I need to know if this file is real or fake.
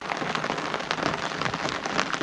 real